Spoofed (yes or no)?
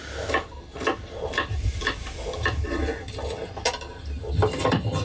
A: no